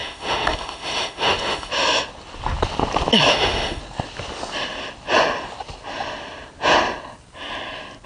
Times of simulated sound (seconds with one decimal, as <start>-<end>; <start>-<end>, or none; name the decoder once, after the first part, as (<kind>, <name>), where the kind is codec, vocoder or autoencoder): 0.0-1.7 (autoencoder, DAC-VAE); 3.3-3.8